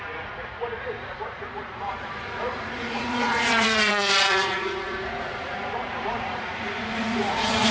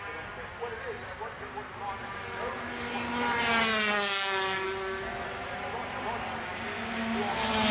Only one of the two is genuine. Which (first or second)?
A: second